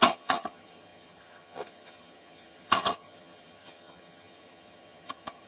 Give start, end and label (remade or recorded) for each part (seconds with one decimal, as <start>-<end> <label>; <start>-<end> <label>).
0.0-5.5 remade